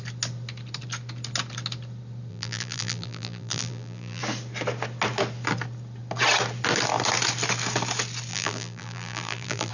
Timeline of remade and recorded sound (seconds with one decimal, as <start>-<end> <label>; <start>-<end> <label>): 0.0-2.3 recorded; 2.3-4.2 remade; 4.2-8.3 recorded; 8.3-9.7 remade